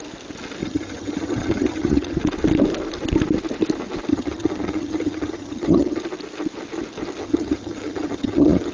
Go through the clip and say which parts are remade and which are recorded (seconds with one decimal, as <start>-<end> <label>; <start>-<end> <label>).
0.0-0.6 recorded; 0.6-2.2 remade; 2.2-4.1 recorded; 4.1-6.0 remade; 6.0-7.2 recorded; 7.2-8.7 remade